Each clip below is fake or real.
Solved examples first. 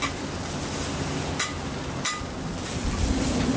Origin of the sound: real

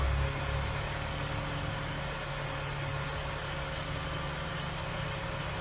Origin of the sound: real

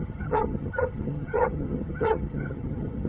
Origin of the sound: fake